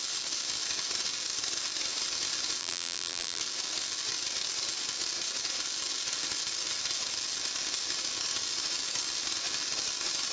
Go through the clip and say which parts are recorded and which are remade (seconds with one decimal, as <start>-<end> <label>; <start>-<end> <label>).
0.0-2.6 recorded; 2.6-3.4 remade; 3.4-10.3 recorded